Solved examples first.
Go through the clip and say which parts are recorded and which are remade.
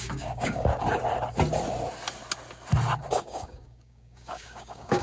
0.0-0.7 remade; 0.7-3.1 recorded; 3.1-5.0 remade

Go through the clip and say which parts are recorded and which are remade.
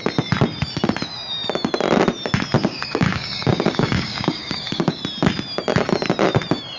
0.0-2.6 recorded; 2.6-5.0 remade; 5.0-6.8 recorded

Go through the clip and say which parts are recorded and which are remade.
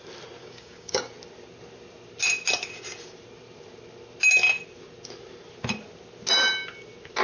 0.0-0.4 recorded; 0.4-1.1 remade; 1.1-7.2 recorded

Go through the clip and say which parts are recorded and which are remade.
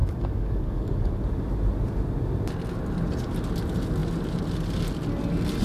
0.0-1.1 remade; 1.1-5.6 recorded